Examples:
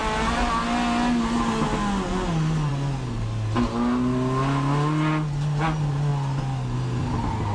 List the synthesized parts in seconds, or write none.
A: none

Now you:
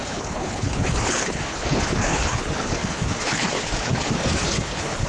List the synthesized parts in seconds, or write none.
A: 0.0-5.1 (codec, HILCodec)

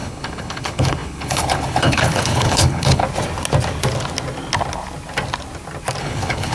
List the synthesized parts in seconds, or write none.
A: 0.0-3.0 (codec, HILCodec); 6.0-6.5

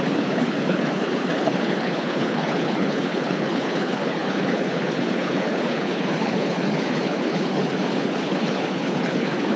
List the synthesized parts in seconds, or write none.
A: 0.0-9.6 (codec, HILCodec)

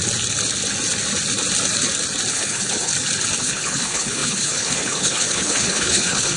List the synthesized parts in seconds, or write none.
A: 2.3-2.9 (codec, HILCodec); 3.4-6.4

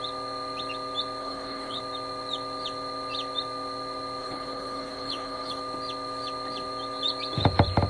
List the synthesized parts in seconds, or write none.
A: 1.2-1.8 (codec, HILCodec); 4.2-5.6

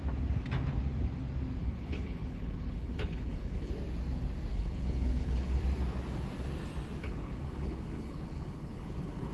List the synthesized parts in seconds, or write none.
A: 1.6-3.7 (codec, HILCodec); 4.5-5.6; 7.0-9.3